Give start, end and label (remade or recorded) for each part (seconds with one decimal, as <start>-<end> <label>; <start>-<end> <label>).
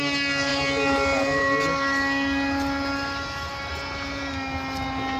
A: 0.0-5.2 recorded